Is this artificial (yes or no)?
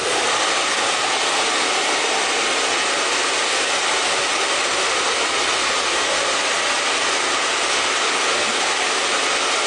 yes